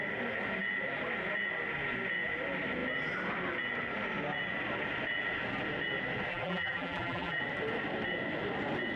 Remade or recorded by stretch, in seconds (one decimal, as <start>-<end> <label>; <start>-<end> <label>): 0.0-6.3 recorded; 6.3-7.4 remade; 7.4-9.0 recorded